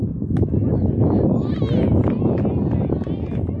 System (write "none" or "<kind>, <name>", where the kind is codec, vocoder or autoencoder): none